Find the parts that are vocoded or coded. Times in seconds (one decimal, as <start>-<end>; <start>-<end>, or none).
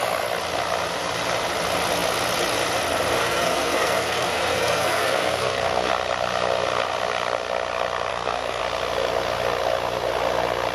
3.2-5.9; 8.1-8.6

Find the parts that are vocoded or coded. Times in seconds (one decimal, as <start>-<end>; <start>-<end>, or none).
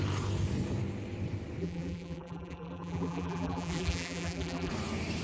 1.6-4.7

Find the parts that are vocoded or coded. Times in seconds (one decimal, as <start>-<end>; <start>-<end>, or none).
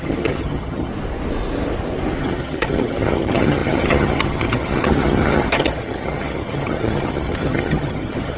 0.0-0.9; 2.2-8.4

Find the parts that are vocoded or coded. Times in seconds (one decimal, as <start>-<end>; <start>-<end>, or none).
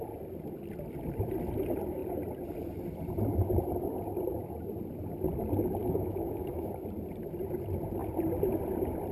5.8-6.7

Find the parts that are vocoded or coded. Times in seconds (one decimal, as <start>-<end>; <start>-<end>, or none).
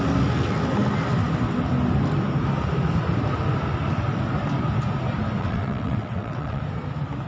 5.4-6.6